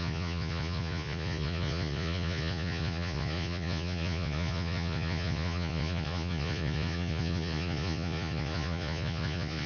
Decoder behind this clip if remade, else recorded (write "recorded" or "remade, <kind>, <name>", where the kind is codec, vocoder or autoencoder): remade, vocoder, Vocos